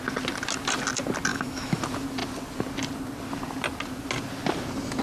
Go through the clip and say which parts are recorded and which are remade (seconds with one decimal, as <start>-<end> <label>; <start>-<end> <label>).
0.0-1.3 recorded; 1.3-1.8 remade; 1.8-5.0 recorded